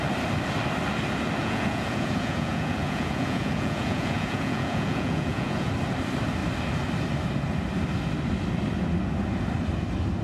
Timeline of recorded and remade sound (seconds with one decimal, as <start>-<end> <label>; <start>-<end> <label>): 0.0-1.4 recorded; 1.4-5.7 remade; 5.7-10.2 recorded